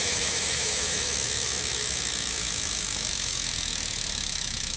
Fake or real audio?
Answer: fake